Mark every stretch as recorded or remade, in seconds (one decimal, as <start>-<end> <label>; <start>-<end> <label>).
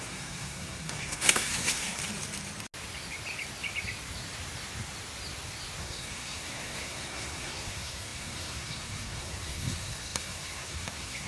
0.0-2.0 remade; 2.0-5.8 recorded; 5.8-11.3 remade